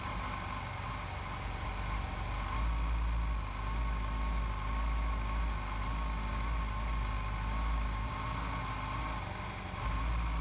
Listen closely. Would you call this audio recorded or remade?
recorded